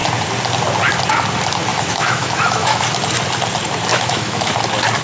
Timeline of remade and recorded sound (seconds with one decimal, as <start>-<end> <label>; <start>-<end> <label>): 0.0-1.7 recorded; 1.7-2.8 remade; 2.8-3.9 recorded; 3.9-4.5 remade; 4.5-5.0 recorded